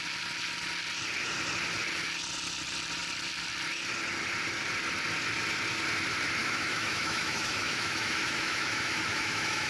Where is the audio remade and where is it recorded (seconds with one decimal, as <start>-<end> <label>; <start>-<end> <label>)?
0.0-6.4 recorded; 6.4-9.7 remade